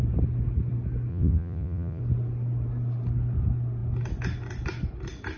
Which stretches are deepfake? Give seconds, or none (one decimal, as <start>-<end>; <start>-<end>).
1.1-2.0